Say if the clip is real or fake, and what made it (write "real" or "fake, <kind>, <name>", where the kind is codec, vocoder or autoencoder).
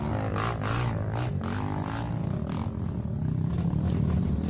real